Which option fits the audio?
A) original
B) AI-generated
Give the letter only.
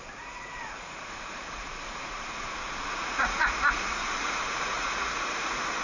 B